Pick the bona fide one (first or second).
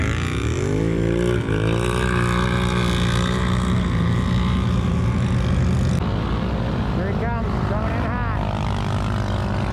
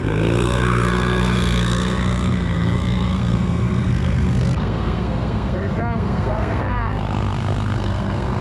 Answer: first